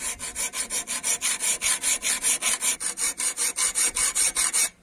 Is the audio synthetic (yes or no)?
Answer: no